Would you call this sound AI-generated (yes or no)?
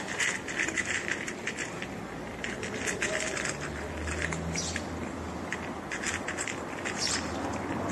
no